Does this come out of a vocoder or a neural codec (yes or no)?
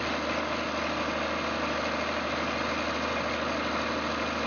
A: no